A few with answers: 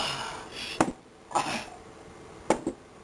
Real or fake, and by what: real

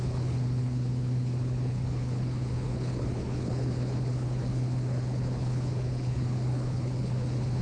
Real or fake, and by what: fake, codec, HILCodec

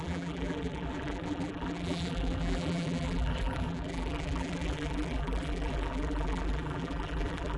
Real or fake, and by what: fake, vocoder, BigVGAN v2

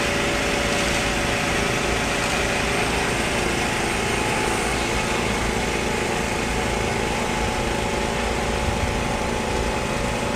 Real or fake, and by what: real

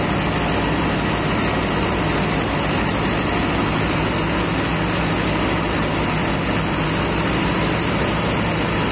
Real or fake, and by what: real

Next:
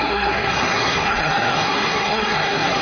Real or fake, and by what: fake, codec, SNAC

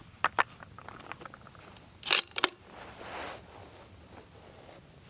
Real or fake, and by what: real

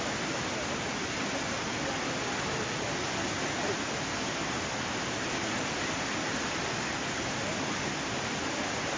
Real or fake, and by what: real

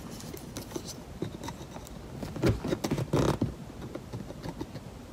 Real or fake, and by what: real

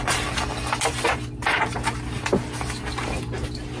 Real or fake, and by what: real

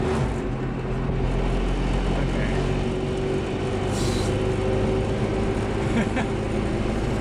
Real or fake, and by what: real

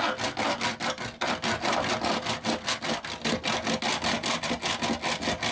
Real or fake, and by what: real